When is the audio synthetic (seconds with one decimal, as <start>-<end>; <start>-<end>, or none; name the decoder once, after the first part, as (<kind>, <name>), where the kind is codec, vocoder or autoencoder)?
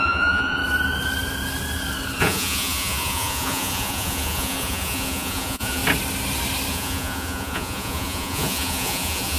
0.0-0.6 (vocoder, Vocos); 2.2-5.8; 6.7-9.4